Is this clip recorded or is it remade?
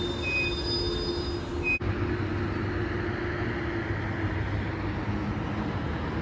recorded